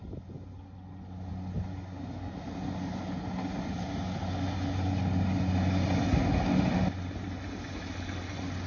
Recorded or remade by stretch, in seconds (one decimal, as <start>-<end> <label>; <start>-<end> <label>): 0.0-8.7 recorded